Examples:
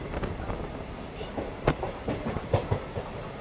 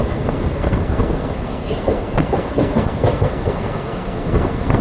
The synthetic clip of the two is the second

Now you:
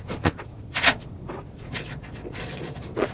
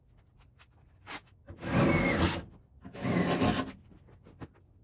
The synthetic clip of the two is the first